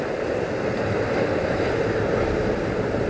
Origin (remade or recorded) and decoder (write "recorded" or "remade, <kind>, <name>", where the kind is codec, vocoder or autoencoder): recorded